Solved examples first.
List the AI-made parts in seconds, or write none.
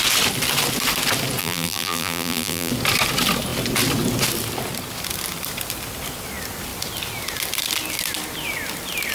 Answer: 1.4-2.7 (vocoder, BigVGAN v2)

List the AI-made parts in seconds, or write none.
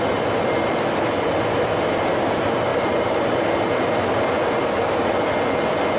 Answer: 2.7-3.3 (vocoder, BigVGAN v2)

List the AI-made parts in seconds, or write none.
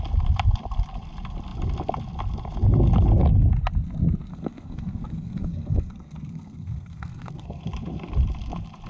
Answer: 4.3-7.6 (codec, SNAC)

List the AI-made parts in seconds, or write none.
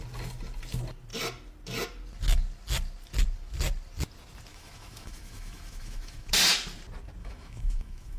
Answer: 4.5-6.3 (autoencoder, DAC-VAE); 7.2-8.2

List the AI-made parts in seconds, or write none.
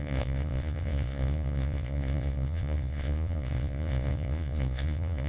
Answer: 0.0-5.3 (vocoder, Vocos)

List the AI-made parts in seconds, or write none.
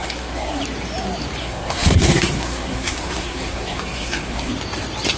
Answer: 0.0-0.6 (codec, SNAC); 1.4-4.5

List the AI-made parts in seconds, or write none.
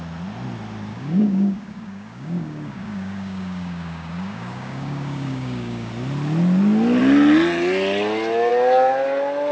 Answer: 0.9-5.9 (codec, DAC)